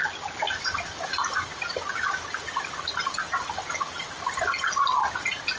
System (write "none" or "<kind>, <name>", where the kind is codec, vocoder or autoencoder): none